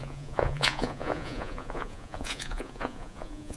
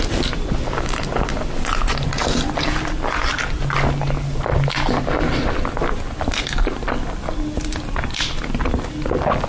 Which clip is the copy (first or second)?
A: first